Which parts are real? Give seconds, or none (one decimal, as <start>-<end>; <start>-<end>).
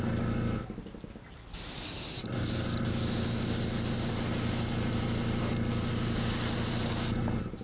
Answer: 0.0-7.6